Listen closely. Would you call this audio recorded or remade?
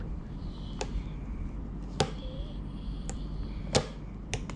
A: recorded